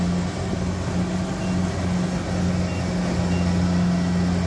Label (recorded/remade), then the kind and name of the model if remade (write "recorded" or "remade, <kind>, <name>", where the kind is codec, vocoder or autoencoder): recorded